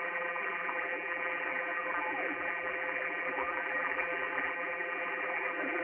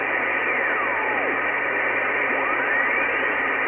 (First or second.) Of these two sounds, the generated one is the first